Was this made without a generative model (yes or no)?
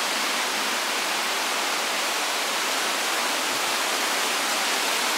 yes